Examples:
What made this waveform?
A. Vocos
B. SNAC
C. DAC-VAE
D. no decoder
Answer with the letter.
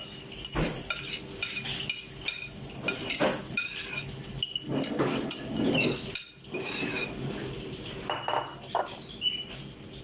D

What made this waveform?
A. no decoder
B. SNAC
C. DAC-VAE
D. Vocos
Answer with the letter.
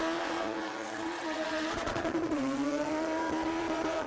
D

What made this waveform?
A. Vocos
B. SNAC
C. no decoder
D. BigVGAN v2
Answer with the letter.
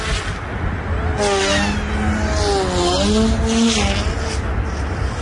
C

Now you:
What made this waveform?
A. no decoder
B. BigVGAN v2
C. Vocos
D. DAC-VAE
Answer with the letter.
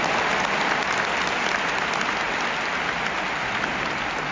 A